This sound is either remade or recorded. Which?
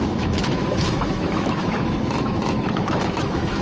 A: remade